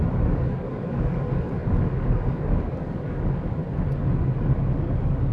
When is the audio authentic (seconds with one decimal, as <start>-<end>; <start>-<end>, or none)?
3.6-4.4